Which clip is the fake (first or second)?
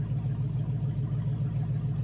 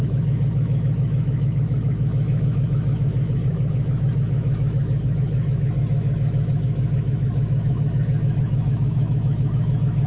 second